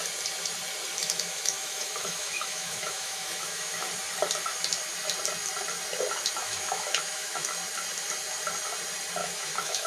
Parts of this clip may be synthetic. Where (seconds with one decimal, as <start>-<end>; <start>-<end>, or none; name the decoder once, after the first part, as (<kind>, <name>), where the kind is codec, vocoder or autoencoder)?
1.0-3.9 (autoencoder, DAC-VAE); 6.4-7.5; 9.2-9.9

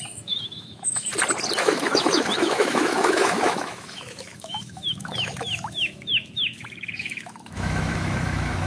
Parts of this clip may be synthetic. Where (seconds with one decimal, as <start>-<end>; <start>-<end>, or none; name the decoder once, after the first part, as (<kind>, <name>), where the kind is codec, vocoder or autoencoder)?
0.0-1.1 (autoencoder, DAC-VAE); 1.6-8.7

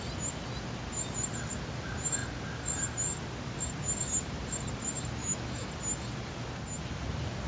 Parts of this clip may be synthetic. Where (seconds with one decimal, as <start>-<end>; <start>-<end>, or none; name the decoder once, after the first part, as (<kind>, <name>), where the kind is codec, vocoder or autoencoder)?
5.2-5.7 (autoencoder, DAC-VAE)

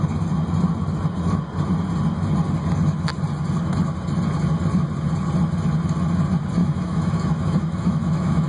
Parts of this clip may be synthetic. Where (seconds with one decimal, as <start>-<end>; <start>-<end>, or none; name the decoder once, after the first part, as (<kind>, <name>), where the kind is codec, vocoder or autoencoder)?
6.6-8.5 (autoencoder, DAC-VAE)

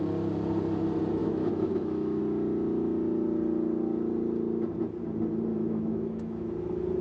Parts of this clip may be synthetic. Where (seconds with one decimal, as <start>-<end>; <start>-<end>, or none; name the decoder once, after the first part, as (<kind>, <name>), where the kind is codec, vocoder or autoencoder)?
1.2-2.2 (autoencoder, DAC-VAE); 5.5-6.5

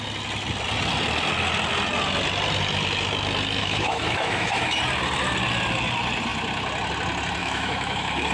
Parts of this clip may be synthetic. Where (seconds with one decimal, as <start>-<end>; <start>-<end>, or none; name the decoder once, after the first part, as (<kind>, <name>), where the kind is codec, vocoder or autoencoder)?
3.6-4.8 (autoencoder, DAC-VAE); 7.4-8.3

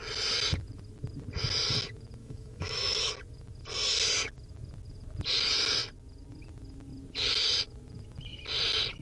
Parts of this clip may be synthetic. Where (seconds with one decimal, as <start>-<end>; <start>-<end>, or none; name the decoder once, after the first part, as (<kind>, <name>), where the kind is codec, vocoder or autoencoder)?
2.2-3.1 (autoencoder, DAC-VAE)

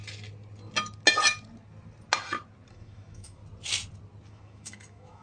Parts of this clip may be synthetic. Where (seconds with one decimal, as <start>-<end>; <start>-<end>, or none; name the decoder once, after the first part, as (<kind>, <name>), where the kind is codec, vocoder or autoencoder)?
2.7-3.4 (autoencoder, DAC-VAE); 4.3-5.2